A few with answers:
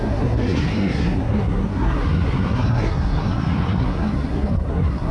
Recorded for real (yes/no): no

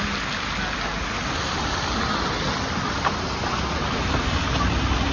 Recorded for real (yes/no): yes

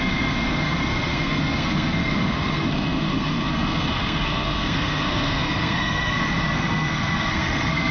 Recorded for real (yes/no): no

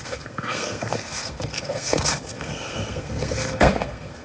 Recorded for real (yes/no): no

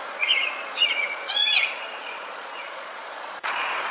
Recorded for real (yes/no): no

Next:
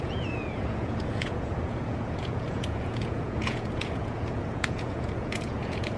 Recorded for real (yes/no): no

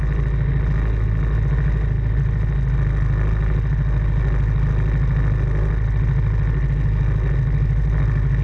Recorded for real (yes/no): yes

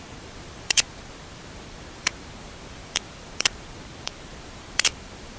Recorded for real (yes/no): no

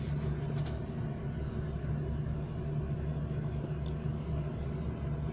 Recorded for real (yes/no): yes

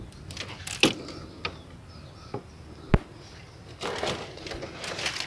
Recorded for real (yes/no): yes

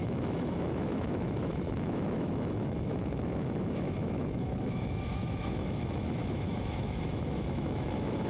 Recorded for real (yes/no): no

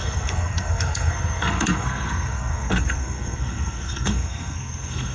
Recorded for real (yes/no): no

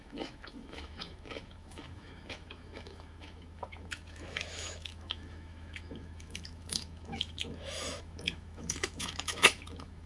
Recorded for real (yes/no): no